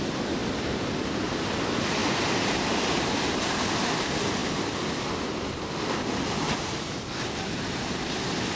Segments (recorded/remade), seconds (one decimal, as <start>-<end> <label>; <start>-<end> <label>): 0.0-0.4 recorded; 0.4-1.4 remade; 1.4-2.0 recorded; 2.0-2.8 remade; 2.8-8.6 recorded